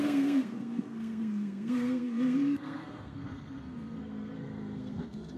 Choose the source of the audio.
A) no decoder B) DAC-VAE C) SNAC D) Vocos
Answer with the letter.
C